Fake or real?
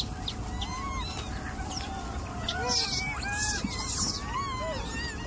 real